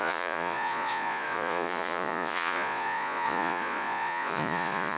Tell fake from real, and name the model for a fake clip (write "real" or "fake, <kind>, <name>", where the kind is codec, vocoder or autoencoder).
fake, vocoder, Vocos